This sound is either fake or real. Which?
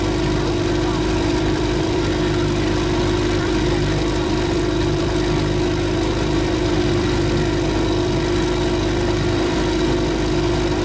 fake